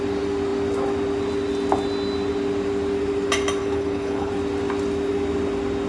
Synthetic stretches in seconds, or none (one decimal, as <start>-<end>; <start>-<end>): 3.6-4.3